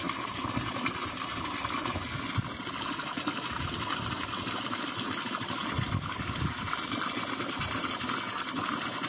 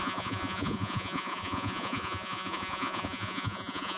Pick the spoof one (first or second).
second